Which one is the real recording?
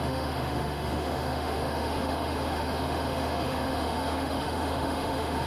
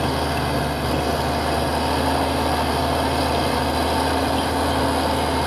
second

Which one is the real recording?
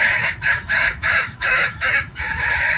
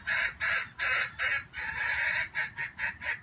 second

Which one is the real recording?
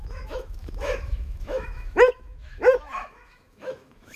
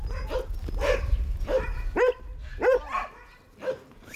second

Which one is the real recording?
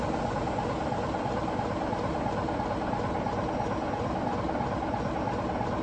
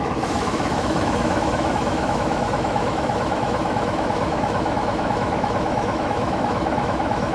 first